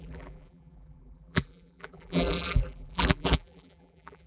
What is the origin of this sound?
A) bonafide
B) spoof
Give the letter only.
B